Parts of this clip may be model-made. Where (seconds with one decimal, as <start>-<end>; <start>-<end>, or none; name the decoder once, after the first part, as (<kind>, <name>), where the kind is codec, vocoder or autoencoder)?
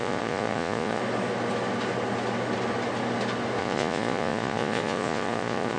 0.0-1.0 (vocoder, Vocos); 3.6-5.8